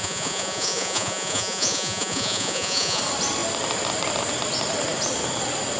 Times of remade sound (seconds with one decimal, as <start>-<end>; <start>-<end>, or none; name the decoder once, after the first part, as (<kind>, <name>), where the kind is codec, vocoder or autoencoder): 0.0-3.0 (vocoder, Vocos)

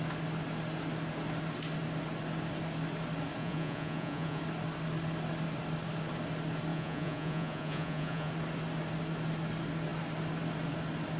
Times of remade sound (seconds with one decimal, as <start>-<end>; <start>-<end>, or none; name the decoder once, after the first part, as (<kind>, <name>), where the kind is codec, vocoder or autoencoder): 3.4-4.4 (vocoder, Vocos); 6.7-8.3